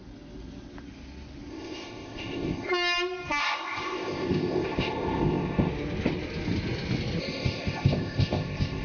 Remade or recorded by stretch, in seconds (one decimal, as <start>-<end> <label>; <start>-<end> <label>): 0.0-1.5 recorded; 1.5-2.7 remade; 2.7-3.4 recorded; 3.4-5.7 remade; 5.7-7.2 recorded; 7.2-8.8 remade